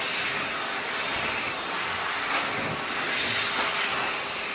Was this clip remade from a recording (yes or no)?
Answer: no